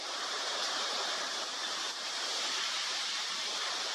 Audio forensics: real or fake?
fake